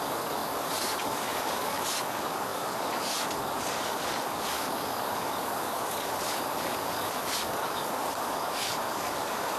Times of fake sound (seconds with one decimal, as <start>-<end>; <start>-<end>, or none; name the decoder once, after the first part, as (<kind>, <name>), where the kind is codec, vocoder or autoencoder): 0.0-9.6 (codec, DAC)